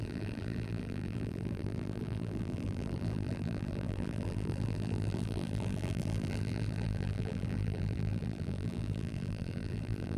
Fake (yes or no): yes